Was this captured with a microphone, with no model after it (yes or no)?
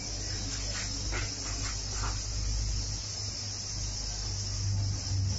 yes